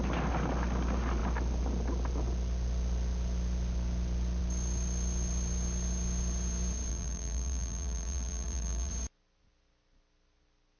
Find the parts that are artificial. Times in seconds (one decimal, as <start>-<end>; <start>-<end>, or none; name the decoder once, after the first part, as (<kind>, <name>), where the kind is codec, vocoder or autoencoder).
6.9-8.9 (vocoder, BigVGAN v2)